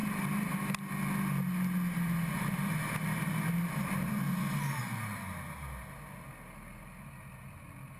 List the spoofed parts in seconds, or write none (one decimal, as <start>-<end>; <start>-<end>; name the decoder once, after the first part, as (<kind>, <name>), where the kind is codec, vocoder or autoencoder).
none